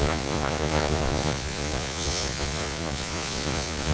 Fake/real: fake